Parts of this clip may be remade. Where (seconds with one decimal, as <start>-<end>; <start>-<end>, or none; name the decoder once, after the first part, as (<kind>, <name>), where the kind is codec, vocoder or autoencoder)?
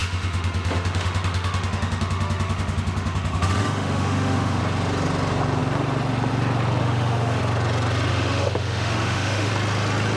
0.0-4.6 (autoencoder, DAC-VAE); 6.8-7.4; 8.1-9.5